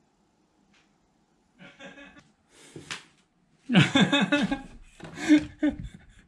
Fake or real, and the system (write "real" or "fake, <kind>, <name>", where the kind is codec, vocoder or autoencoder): real